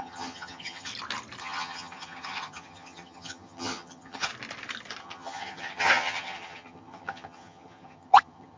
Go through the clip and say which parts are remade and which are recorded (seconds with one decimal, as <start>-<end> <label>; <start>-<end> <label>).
0.0-0.9 remade; 0.9-1.4 recorded; 1.4-4.3 remade; 4.3-5.0 recorded; 5.0-8.6 remade

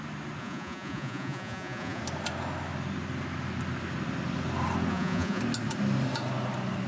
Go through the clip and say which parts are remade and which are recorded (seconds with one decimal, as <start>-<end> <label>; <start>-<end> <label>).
0.0-0.4 recorded; 0.4-2.0 remade; 2.0-4.9 recorded; 4.9-5.4 remade; 5.4-6.9 recorded

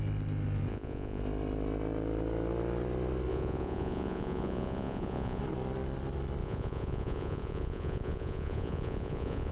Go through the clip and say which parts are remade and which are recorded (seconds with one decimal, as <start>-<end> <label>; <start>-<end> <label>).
0.0-0.7 recorded; 0.7-1.2 remade; 1.2-3.3 recorded; 3.3-5.4 remade; 5.4-6.4 recorded; 6.4-9.5 remade

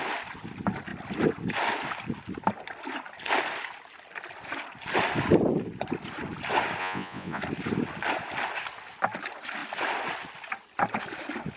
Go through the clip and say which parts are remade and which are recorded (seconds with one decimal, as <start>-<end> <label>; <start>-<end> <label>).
0.0-6.8 recorded; 6.8-7.4 remade; 7.4-11.6 recorded

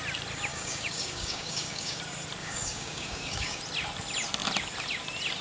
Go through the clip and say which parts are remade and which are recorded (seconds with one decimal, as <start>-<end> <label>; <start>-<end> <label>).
0.0-0.5 recorded; 0.5-2.0 remade; 2.0-2.4 recorded; 2.4-3.6 remade; 3.6-5.4 recorded

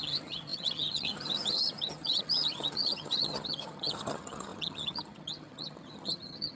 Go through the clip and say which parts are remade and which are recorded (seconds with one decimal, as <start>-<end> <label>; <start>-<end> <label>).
0.0-6.6 remade